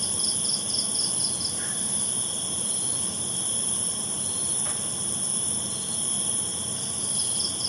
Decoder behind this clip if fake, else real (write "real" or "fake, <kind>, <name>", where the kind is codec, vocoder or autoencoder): real